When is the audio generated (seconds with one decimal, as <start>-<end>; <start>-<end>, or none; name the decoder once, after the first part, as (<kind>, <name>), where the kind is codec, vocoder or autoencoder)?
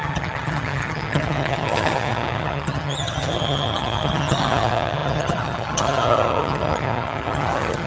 0.0-7.9 (vocoder, HiFi-GAN)